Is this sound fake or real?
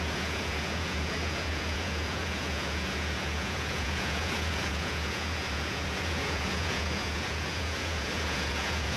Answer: fake